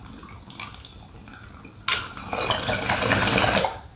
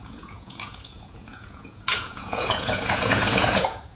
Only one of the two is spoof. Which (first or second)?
second